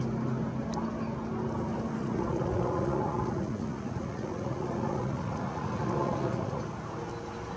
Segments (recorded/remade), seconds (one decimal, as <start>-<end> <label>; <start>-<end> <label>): 0.0-2.0 recorded; 2.0-6.6 remade; 6.6-7.6 recorded